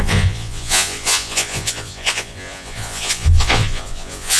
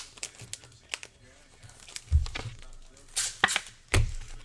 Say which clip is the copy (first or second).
first